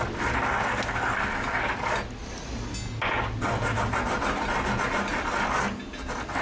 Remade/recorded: recorded